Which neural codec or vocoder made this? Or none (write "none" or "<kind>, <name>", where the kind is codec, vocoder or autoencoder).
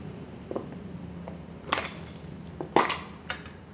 none